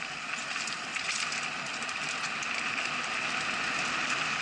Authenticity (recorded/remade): recorded